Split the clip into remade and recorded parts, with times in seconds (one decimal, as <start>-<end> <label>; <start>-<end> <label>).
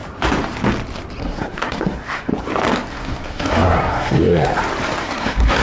0.0-1.2 recorded; 1.2-2.3 remade; 2.3-2.9 recorded; 2.9-4.5 remade; 4.5-5.0 recorded; 5.0-5.6 remade